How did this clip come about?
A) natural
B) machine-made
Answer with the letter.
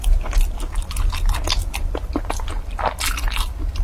A